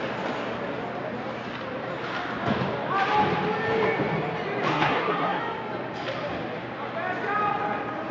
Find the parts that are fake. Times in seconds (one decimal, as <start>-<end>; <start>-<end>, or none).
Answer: 4.7-5.4